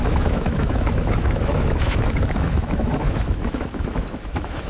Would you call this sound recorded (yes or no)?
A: no